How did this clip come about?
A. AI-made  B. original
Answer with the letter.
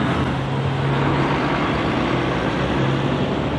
B